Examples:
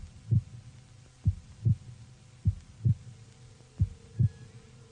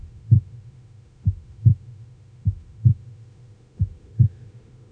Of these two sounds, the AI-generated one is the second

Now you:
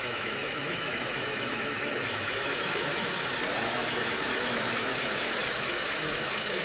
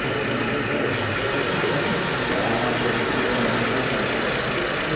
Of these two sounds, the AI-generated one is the first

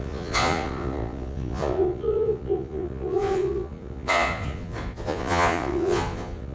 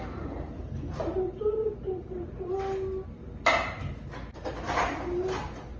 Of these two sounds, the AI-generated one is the first